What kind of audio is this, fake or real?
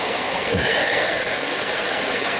fake